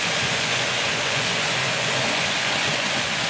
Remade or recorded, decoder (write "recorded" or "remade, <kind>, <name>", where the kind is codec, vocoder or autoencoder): remade, vocoder, Vocos